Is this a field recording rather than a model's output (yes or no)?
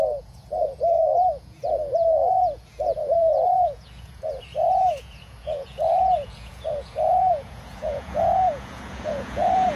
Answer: no